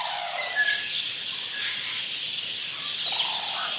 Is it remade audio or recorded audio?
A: recorded